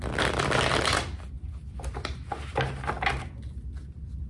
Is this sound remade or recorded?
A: recorded